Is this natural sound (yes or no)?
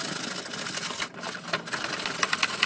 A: yes